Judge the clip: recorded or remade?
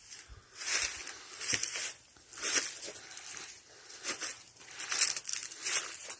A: recorded